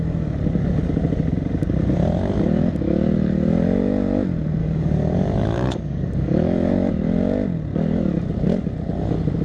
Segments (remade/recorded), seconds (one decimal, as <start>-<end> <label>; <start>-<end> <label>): 0.0-4.6 recorded; 4.6-6.9 remade; 6.9-9.4 recorded